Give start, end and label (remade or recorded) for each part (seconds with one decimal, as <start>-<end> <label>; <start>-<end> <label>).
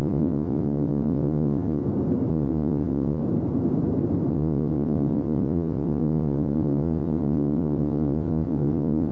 0.0-1.8 remade; 1.8-2.3 recorded; 2.3-3.2 remade; 3.2-4.3 recorded; 4.3-9.1 remade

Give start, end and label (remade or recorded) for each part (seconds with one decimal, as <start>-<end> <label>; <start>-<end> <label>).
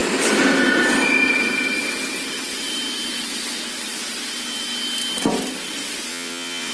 0.0-6.1 recorded; 6.1-6.7 remade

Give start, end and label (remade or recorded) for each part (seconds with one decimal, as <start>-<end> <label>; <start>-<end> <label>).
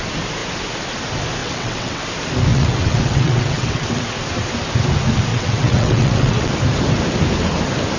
0.0-1.4 recorded; 1.4-2.0 remade; 2.0-2.5 recorded; 2.5-4.0 remade; 4.0-5.3 recorded; 5.3-6.5 remade; 6.5-8.0 recorded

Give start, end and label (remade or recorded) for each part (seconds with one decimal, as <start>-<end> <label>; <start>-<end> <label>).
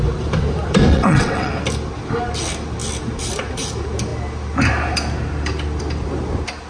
0.0-0.9 recorded; 0.9-1.5 remade; 1.5-6.7 recorded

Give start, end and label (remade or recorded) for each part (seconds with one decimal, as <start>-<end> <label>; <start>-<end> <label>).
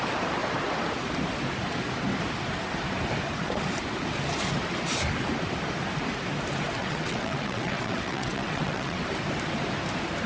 0.0-6.8 recorded; 6.8-9.0 remade; 9.0-10.3 recorded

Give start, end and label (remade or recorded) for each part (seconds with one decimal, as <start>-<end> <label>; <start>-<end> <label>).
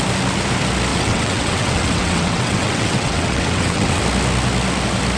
0.0-0.9 recorded; 0.9-4.0 remade; 4.0-5.2 recorded